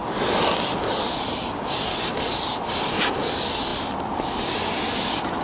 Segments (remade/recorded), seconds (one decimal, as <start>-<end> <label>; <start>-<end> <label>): 0.0-5.4 recorded